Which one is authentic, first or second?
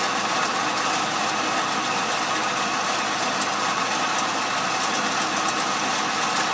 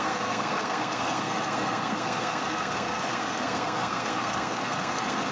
first